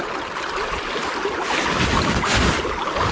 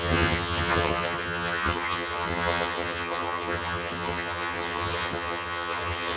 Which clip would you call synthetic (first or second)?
second